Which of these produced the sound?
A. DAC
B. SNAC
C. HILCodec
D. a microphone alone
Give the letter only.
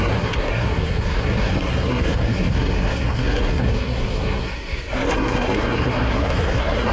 B